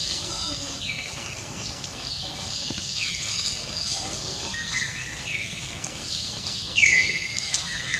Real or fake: fake